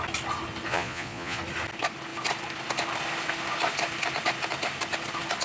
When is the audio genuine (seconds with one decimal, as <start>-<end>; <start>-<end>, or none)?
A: 0.0-0.7; 1.4-5.4